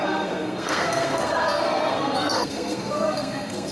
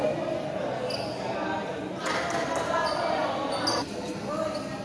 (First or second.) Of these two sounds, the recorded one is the second